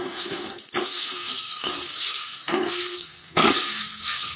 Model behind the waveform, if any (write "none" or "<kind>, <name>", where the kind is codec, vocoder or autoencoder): codec, SNAC